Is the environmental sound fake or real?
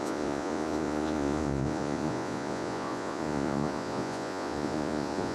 fake